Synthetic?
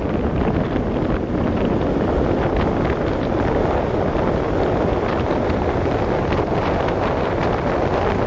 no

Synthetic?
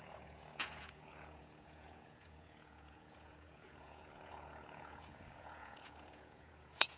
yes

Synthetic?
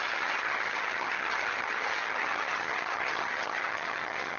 yes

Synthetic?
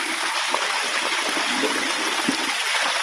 no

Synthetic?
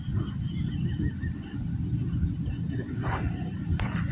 no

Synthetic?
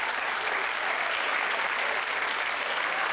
no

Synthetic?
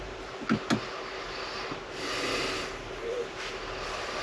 no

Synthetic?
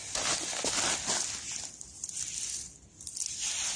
no